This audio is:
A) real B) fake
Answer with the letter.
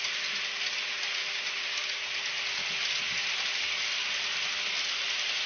A